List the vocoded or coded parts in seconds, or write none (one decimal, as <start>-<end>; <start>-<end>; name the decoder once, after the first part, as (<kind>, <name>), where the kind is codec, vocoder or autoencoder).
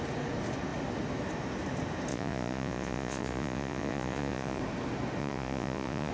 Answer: 2.1-4.6 (vocoder, Vocos); 5.2-6.1